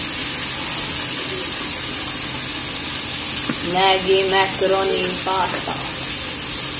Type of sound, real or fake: real